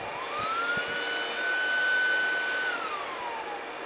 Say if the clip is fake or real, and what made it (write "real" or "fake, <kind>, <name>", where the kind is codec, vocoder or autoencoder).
real